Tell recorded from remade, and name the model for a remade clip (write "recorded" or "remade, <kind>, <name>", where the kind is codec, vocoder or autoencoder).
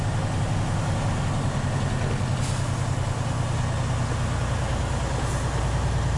recorded